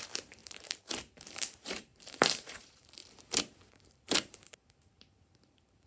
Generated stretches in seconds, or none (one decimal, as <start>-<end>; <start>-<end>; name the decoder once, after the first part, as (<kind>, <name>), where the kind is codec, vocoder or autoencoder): 0.0-5.9 (vocoder, BigVGAN v2)